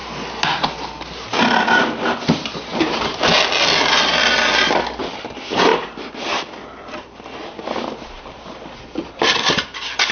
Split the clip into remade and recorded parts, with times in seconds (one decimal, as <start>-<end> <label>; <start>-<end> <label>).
0.0-10.1 recorded